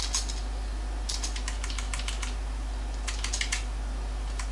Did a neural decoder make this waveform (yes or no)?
no